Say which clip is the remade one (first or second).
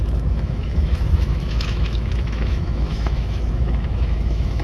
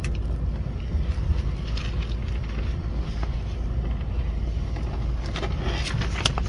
first